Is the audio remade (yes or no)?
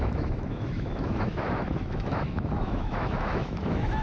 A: yes